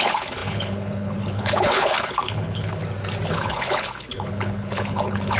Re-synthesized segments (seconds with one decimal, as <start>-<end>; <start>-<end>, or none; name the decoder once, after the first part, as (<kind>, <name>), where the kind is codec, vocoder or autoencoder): 0.0-2.8 (codec, HILCodec); 3.3-5.4